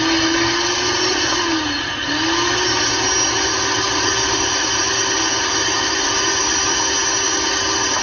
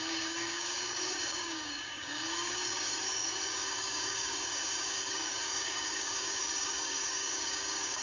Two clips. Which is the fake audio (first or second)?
second